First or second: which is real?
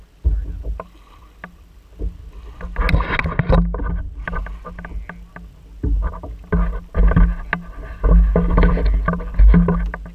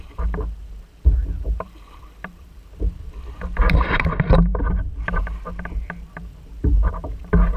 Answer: first